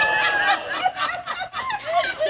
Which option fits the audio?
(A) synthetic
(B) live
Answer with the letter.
B